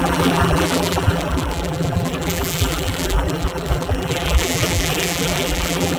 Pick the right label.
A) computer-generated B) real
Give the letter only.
A